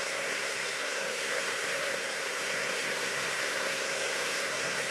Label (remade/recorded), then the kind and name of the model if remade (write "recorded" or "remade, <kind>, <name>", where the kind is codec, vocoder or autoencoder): remade, codec, SNAC